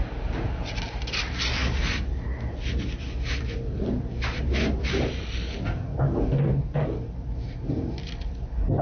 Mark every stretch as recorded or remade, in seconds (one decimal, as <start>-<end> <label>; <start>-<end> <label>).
0.0-8.8 recorded